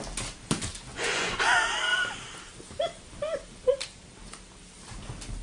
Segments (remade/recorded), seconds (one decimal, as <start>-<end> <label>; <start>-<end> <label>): 0.0-0.9 recorded; 0.9-1.4 remade; 1.4-5.4 recorded